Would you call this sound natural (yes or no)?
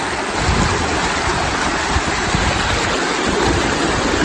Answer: yes